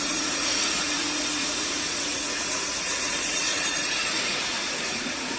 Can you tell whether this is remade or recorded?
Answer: remade